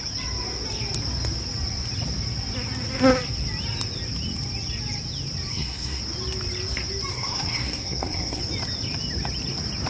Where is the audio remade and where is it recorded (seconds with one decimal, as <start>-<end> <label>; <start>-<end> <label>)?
0.0-5.5 recorded; 5.5-6.0 remade; 6.0-7.1 recorded; 7.1-8.4 remade; 8.4-9.9 recorded